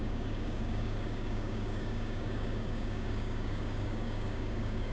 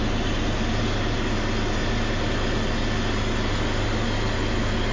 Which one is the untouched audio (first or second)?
second